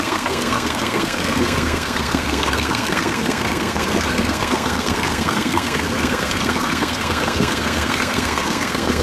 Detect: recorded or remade remade